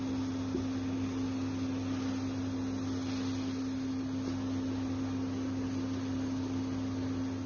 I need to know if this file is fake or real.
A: real